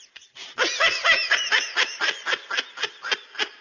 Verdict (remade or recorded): recorded